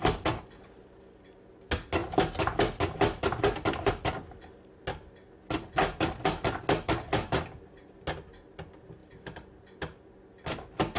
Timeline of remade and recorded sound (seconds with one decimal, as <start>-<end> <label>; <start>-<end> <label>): 0.0-11.0 recorded